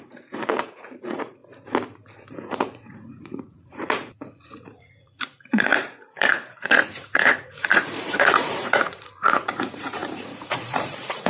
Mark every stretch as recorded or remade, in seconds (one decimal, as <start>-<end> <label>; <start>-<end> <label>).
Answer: 0.0-1.4 remade; 1.4-2.3 recorded; 2.3-11.3 remade